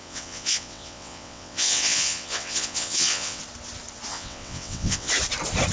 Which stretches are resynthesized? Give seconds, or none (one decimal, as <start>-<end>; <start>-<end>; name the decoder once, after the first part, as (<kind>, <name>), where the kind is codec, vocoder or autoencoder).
0.0-3.4 (vocoder, WaveNeXt); 4.1-5.1